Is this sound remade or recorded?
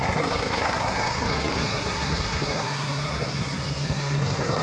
remade